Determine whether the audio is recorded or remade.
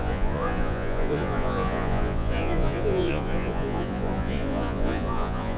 remade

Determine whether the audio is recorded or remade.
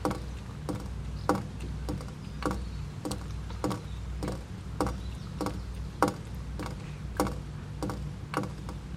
recorded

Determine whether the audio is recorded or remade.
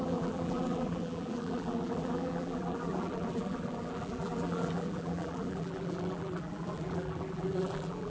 remade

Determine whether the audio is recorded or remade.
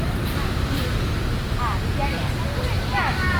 recorded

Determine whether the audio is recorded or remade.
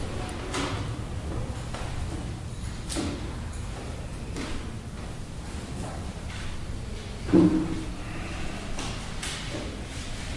recorded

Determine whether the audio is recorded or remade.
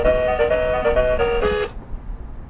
recorded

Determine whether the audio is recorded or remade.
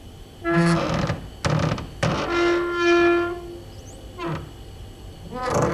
recorded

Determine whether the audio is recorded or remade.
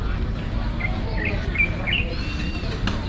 recorded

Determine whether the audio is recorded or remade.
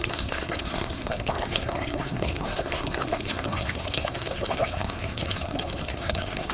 remade